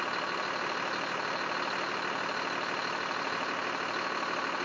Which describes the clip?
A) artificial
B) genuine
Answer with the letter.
B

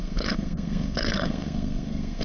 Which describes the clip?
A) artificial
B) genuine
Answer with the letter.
A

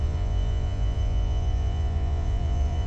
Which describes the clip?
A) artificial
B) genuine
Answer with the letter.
A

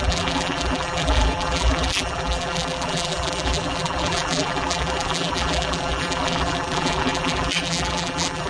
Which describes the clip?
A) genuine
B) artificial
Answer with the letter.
B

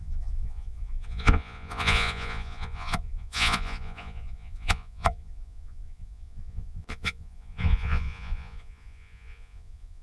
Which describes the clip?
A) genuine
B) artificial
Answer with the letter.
B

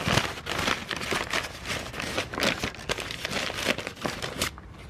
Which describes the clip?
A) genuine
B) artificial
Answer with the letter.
A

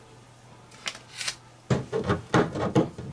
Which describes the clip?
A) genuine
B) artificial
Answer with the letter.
A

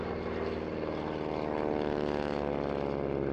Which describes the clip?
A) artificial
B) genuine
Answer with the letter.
B